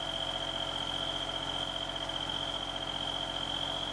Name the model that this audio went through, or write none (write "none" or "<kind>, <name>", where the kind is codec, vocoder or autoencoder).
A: none